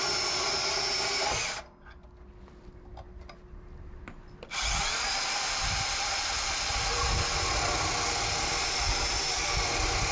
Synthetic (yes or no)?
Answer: no